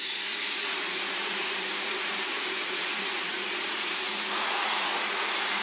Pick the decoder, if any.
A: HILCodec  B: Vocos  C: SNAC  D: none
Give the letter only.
B